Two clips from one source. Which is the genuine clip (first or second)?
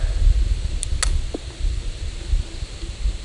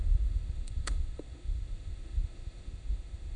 first